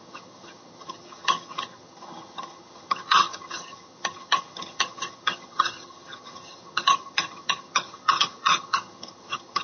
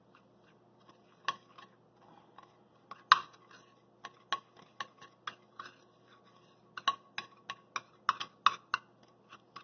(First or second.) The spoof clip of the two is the first